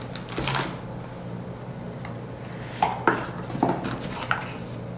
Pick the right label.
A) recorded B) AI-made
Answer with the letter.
A